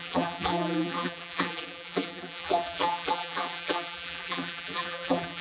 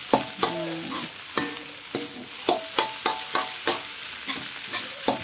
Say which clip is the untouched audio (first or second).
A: second